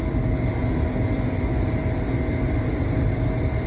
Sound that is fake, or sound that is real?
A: real